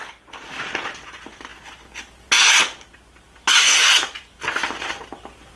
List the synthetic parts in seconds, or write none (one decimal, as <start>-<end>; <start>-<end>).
none